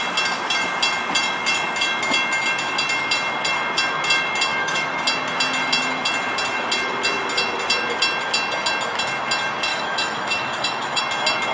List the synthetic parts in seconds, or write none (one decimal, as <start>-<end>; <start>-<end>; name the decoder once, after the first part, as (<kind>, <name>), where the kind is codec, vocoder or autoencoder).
4.5-5.0 (autoencoder, DAC-VAE); 9.7-11.0